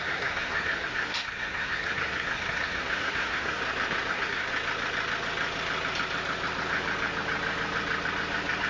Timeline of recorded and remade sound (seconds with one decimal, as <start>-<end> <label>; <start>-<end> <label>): 0.0-3.6 remade; 3.6-4.1 recorded; 4.1-4.5 remade; 4.5-8.7 recorded